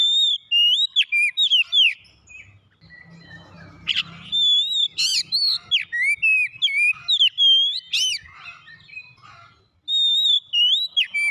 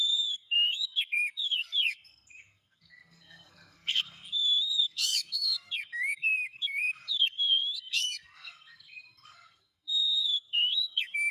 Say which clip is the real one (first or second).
first